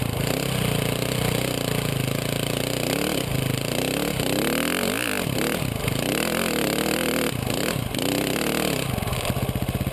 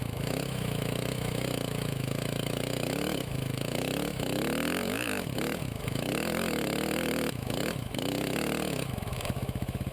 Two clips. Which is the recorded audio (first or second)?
first